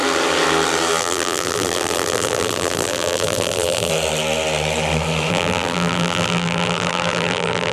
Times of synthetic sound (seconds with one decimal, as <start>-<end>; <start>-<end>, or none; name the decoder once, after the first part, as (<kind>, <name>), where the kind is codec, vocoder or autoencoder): 1.0-3.9 (vocoder, BigVGAN v2); 5.3-7.7